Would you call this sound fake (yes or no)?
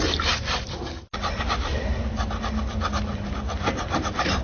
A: no